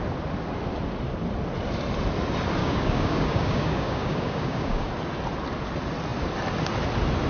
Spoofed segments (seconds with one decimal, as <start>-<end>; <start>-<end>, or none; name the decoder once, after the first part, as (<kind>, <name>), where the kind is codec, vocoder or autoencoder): 2.6-4.9 (codec, DAC)